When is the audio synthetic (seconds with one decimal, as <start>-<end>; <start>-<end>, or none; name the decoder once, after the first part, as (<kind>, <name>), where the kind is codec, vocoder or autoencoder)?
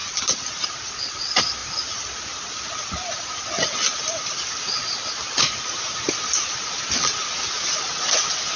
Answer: none